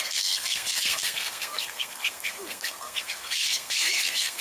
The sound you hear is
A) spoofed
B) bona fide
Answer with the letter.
A